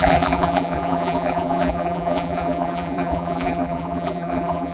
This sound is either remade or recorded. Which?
remade